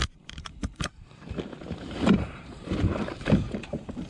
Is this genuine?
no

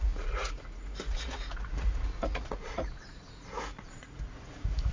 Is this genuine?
no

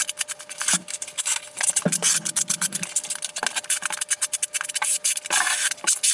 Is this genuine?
yes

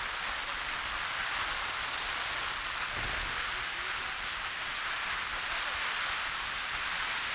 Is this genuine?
yes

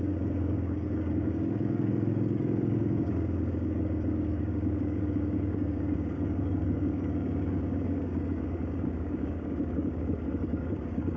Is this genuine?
no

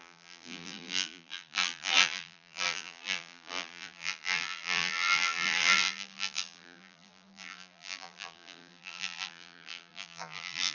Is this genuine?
no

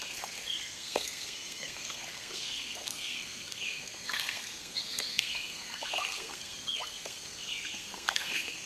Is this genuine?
no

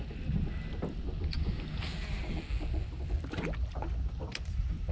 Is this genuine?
yes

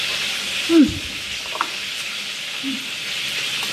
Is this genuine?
yes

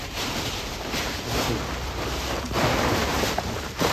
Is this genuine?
no